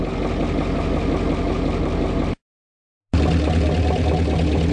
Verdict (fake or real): real